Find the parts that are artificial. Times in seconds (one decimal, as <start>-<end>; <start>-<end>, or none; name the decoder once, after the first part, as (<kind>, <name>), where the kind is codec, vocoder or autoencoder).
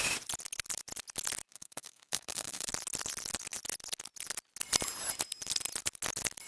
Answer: 1.5-2.7 (codec, SNAC)